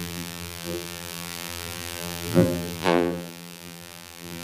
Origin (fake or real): fake